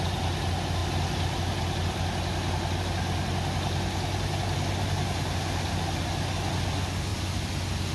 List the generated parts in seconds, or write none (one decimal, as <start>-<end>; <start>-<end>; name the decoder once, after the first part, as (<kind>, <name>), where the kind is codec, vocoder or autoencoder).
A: none